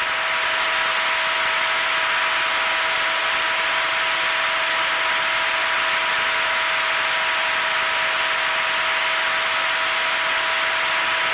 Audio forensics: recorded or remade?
recorded